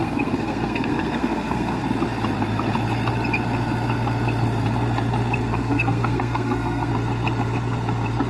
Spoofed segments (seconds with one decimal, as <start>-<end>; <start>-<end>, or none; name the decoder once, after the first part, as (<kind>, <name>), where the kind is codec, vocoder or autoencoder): 0.0-1.8 (codec, SNAC); 5.4-6.9